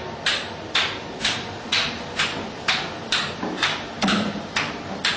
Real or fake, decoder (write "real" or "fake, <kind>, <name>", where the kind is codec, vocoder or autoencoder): real